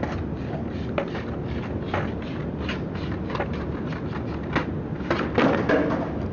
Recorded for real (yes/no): yes